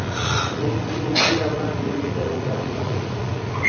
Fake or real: fake